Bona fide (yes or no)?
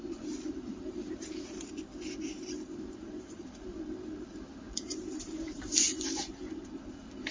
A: no